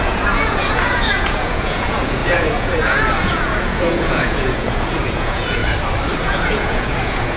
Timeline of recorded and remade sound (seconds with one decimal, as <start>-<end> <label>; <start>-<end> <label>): 0.0-5.6 remade; 5.6-6.2 recorded; 6.2-7.4 remade